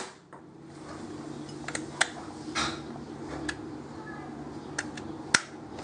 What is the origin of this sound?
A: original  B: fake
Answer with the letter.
A